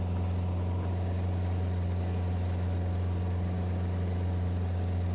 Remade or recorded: recorded